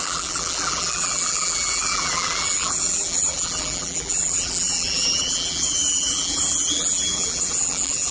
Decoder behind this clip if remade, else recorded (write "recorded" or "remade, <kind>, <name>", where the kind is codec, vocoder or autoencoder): remade, vocoder, BigVGAN v2